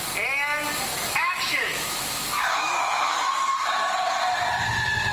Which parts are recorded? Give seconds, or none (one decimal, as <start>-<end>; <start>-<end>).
0.0-0.9; 3.5-5.1